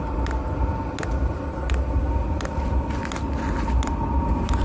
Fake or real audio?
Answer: real